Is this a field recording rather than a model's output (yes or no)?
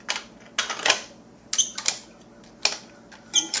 yes